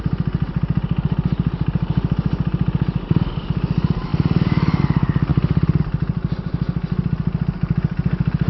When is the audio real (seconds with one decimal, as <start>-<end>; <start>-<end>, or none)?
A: 0.0-8.5